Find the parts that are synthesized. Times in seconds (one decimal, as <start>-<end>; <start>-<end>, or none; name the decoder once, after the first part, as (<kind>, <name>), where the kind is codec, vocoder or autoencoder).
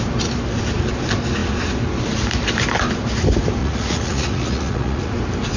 3.6-5.1 (vocoder, Vocos)